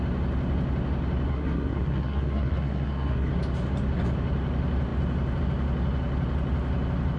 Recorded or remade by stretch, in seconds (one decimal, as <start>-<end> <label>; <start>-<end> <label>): 0.0-1.3 recorded; 1.3-3.3 remade; 3.3-7.2 recorded